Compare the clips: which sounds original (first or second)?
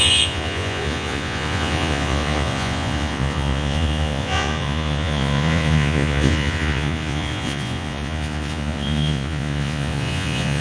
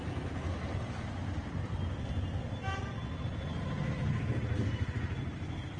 second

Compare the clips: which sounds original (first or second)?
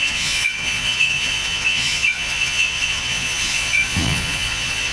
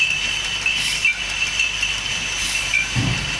second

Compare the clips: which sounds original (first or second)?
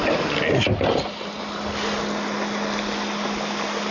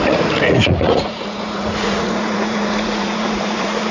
first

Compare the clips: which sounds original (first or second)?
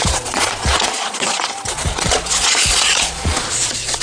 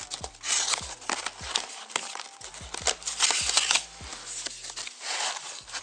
second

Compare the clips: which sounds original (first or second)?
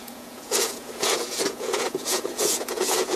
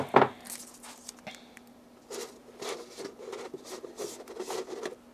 second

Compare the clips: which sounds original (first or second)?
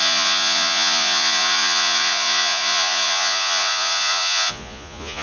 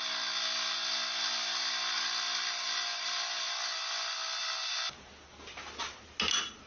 second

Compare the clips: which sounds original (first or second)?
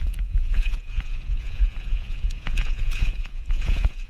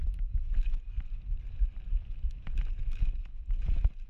second